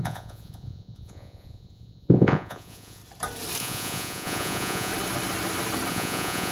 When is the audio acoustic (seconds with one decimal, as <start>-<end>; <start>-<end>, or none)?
3.0-3.6; 4.9-5.9